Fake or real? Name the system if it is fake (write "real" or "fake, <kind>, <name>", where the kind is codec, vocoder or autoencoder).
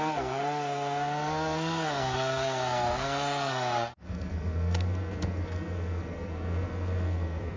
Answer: fake, codec, SNAC